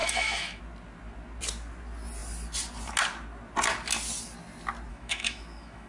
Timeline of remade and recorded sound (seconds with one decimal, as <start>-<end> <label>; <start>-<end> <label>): 0.0-0.6 remade; 0.6-4.9 recorded; 4.9-5.9 remade